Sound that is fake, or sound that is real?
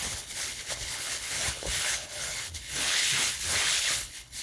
fake